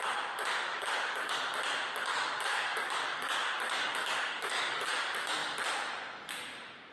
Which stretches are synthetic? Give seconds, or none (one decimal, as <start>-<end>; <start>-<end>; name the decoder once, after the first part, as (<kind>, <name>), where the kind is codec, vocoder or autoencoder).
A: 0.7-1.3 (codec, DAC); 2.1-4.9